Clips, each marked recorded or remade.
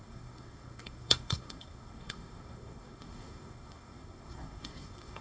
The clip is remade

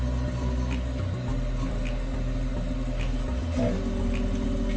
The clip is recorded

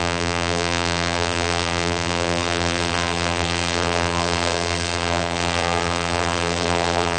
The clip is remade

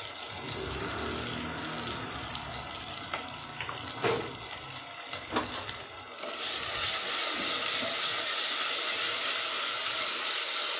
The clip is recorded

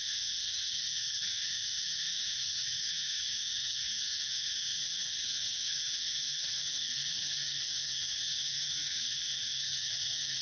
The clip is remade